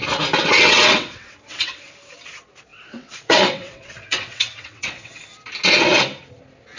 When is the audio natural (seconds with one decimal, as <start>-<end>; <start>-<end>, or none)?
0.0-0.4; 1.9-2.7; 5.2-6.8